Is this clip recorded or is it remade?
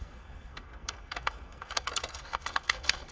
remade